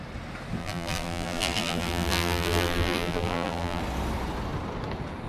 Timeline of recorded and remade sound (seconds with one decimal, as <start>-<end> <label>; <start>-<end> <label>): 0.0-0.6 recorded; 0.6-3.8 remade; 3.8-5.3 recorded